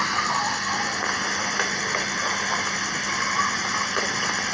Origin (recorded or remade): recorded